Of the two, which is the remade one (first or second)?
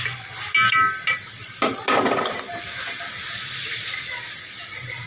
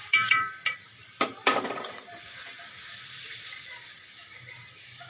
second